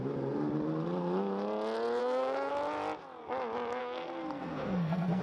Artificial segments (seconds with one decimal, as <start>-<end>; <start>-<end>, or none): 2.0-2.5; 3.8-5.2